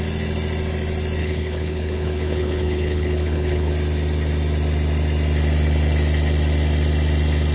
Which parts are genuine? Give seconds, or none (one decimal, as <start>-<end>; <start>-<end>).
0.0-1.2; 3.7-7.5